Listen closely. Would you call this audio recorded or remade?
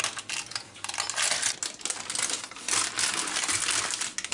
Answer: recorded